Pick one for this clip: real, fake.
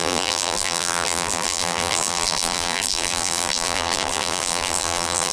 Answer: fake